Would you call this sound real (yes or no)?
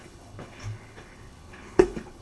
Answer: no